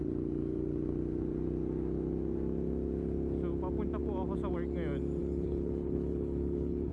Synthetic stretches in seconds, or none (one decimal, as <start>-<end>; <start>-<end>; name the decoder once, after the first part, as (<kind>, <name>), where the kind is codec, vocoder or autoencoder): 5.2-6.9 (codec, HILCodec)

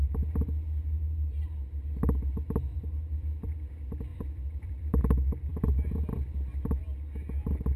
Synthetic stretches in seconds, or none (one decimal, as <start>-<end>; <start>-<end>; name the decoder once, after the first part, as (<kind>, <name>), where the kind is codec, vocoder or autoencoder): 2.7-3.6 (vocoder, BigVGAN v2); 4.1-5.0

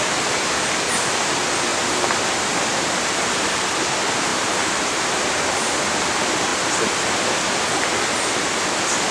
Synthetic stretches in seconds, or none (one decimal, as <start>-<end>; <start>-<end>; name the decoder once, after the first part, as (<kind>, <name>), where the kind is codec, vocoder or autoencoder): 2.7-3.7 (vocoder, BigVGAN v2); 4.3-6.1

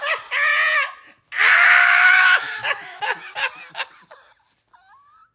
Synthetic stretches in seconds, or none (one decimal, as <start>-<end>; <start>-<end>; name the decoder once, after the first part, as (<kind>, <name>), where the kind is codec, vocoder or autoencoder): 1.8-3.3 (autoencoder, DAC-VAE)

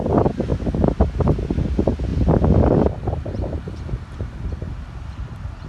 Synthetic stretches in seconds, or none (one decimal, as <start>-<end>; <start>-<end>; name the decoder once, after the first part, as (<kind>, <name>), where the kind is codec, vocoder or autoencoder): none

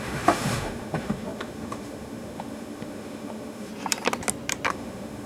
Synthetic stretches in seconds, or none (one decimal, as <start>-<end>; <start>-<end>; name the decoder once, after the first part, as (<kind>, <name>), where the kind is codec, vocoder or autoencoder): 0.0-3.7 (autoencoder, DAC-VAE); 4.7-5.3